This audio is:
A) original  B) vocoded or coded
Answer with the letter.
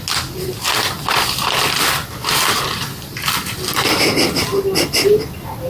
A